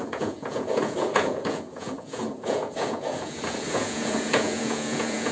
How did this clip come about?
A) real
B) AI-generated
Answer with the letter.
B